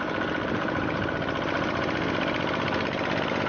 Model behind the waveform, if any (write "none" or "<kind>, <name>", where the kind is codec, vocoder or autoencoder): none